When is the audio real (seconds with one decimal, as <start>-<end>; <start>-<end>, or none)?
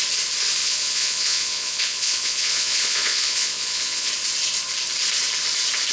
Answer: 0.0-0.6; 4.1-5.9